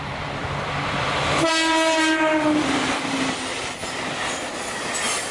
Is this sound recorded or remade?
recorded